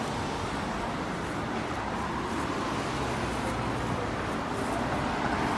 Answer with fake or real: real